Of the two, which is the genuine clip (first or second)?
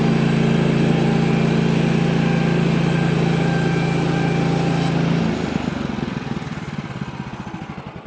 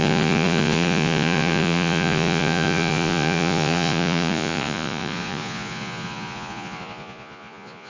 first